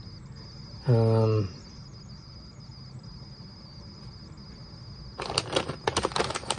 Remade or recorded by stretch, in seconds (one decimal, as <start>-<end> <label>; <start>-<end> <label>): 0.0-6.6 recorded